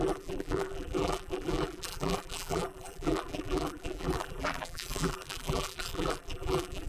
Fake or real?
fake